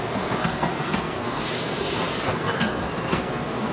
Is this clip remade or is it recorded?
remade